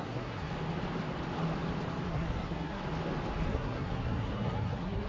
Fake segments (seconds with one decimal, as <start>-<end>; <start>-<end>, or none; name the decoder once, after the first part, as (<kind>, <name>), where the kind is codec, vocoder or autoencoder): 0.0-0.5 (codec, SNAC); 2.1-2.8; 3.5-5.1

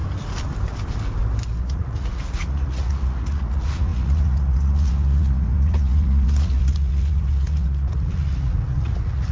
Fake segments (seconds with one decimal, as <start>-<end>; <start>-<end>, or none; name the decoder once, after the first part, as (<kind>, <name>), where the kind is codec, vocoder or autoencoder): 1.6-9.3 (vocoder, Vocos)